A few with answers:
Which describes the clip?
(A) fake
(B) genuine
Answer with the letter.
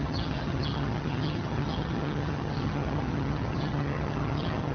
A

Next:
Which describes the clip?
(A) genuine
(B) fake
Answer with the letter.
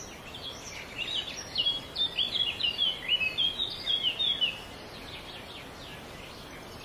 A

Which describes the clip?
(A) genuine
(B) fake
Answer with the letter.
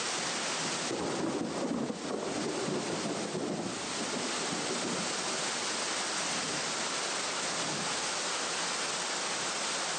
A